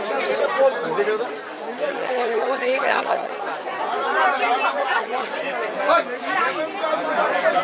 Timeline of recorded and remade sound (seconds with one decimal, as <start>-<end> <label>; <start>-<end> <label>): 0.0-1.9 recorded; 1.9-3.3 remade; 3.3-4.8 recorded; 4.8-5.3 remade; 5.3-7.6 recorded